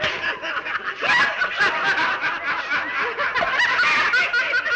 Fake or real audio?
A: real